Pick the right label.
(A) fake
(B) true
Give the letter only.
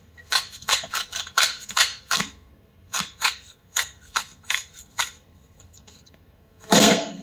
A